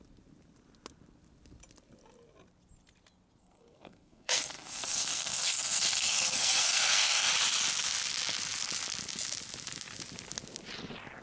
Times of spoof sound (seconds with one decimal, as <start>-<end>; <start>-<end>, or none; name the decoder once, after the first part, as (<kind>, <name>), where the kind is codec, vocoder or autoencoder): 3.4-7.3 (codec, SNAC)